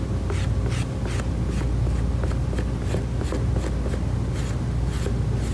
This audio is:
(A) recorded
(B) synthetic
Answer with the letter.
A